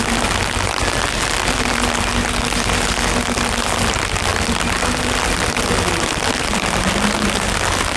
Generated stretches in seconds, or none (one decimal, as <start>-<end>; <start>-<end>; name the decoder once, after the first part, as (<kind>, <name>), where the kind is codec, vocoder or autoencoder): none